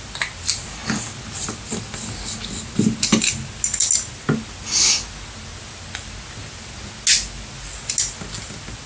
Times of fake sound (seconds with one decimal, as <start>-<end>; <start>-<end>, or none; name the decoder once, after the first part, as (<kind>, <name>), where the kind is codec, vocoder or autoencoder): none